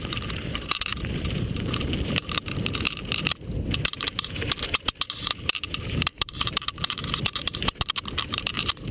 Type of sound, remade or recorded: remade